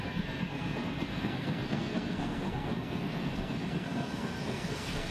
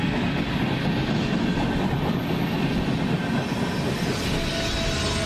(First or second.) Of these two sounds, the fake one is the first